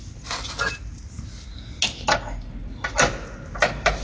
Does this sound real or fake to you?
real